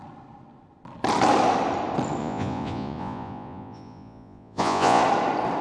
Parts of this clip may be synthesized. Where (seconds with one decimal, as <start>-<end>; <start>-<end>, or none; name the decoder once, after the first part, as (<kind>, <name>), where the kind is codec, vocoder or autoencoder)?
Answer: 2.2-5.0 (vocoder, Vocos)